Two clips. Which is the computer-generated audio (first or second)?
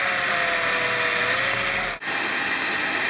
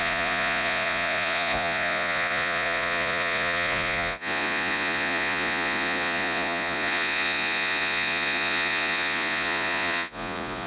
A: second